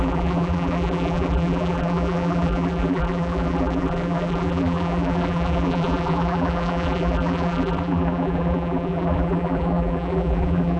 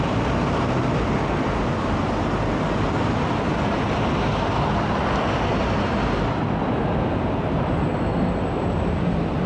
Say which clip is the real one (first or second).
second